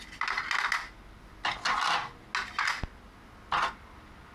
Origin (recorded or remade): recorded